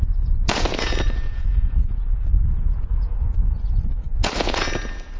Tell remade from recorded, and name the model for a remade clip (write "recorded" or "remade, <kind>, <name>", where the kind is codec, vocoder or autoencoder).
remade, vocoder, Vocos